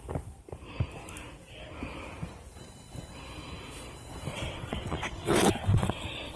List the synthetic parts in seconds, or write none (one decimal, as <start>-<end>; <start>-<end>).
4.3-6.4